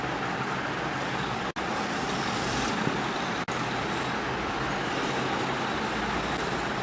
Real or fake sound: real